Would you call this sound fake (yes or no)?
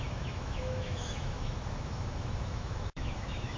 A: yes